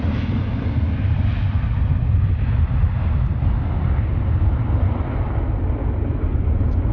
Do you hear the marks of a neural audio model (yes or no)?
no